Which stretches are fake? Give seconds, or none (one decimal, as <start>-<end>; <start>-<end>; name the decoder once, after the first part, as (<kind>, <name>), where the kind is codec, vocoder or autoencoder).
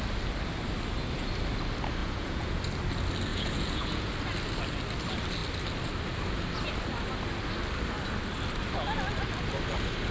2.0-2.6 (vocoder, Vocos); 3.3-4.1